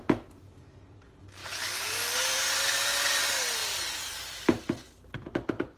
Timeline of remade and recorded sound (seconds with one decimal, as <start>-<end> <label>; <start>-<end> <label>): 0.0-5.8 remade